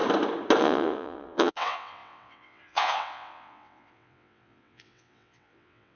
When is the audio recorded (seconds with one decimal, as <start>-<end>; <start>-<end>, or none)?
0.0-0.6